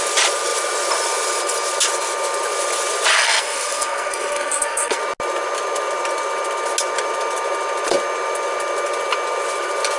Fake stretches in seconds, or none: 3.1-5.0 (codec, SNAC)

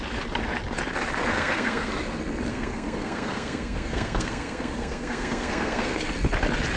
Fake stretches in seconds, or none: 1.3-1.9 (codec, SNAC); 2.5-6.0

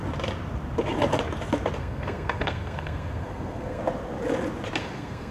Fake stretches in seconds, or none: 1.8-3.8 (codec, SNAC); 4.8-5.3

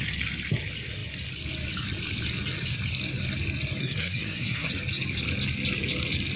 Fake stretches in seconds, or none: 3.8-4.7 (codec, SNAC)

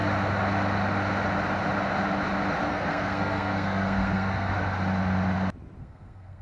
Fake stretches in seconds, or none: 2.7-4.5 (codec, SNAC); 5.8-6.4

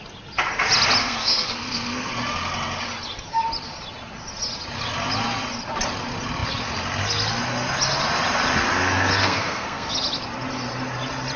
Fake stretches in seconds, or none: 1.0-2.1 (codec, SNAC); 9.2-9.9

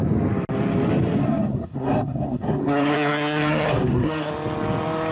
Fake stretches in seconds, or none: 1.2-4.3 (codec, SNAC)

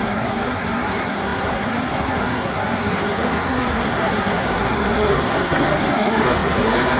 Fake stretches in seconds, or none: 0.0-7.0 (codec, SNAC)